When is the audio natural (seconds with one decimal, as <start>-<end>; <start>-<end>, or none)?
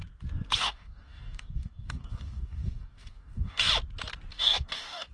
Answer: 0.0-0.6; 3.7-4.3